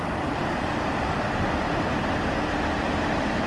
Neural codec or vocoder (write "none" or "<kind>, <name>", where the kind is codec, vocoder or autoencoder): none